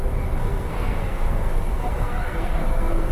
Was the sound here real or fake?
fake